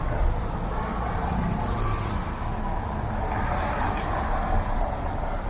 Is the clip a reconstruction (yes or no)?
no